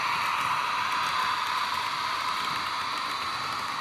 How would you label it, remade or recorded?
recorded